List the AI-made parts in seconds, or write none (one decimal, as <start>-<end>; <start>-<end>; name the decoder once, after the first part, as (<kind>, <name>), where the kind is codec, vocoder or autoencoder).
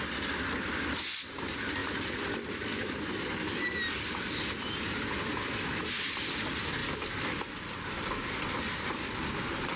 none